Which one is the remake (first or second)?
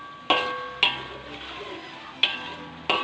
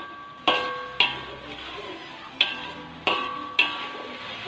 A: second